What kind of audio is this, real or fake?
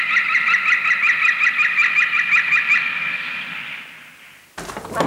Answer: real